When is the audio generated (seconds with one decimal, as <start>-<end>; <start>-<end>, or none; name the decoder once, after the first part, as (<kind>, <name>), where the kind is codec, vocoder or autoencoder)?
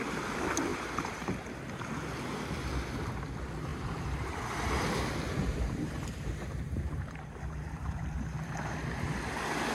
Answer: 0.7-1.4 (vocoder, BigVGAN v2); 3.7-4.4; 5.4-8.9